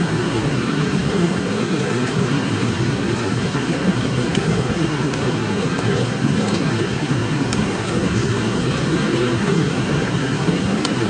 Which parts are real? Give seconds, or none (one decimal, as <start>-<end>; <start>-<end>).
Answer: none